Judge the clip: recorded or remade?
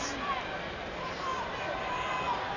recorded